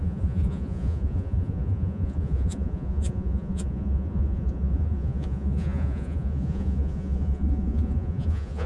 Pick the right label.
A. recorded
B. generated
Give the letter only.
B